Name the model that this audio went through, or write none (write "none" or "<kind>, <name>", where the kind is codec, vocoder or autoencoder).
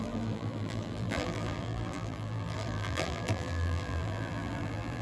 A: vocoder, BigVGAN v2